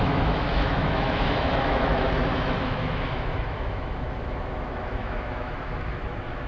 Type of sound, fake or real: fake